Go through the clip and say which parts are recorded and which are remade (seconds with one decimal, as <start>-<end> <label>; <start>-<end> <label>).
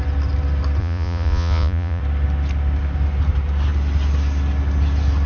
0.0-0.8 recorded; 0.8-2.0 remade; 2.0-5.3 recorded